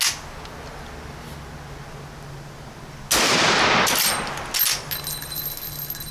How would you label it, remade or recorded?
recorded